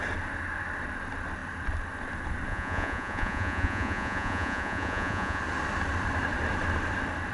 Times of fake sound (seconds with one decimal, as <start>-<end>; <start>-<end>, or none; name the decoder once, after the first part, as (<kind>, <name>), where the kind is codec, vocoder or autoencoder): 2.5-5.4 (vocoder, Vocos)